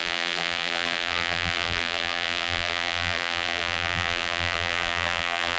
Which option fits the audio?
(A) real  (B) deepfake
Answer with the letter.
B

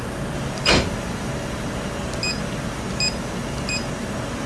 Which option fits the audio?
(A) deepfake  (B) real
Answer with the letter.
B